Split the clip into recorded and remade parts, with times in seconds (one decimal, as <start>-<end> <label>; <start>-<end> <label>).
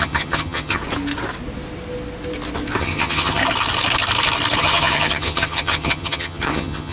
0.0-0.8 remade; 0.8-2.8 recorded; 2.8-3.4 remade; 3.4-4.6 recorded; 4.6-6.9 remade